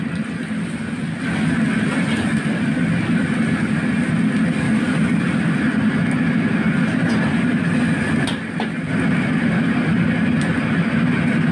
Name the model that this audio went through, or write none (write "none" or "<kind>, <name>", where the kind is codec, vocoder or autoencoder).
none